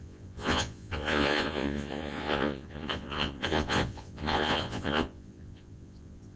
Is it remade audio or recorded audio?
remade